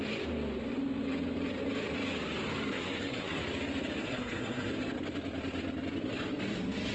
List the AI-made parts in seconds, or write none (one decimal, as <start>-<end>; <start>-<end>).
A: 2.7-3.4; 4.0-4.7